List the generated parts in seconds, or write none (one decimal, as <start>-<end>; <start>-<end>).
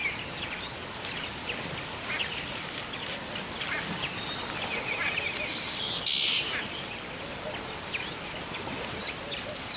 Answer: none